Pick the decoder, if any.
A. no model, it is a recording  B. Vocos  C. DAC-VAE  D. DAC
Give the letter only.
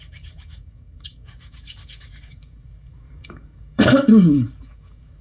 D